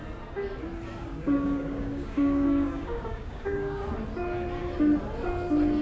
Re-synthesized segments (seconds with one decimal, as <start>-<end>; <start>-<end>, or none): 1.0-3.8